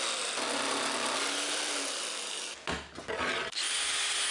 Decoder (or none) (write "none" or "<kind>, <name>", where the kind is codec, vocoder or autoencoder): none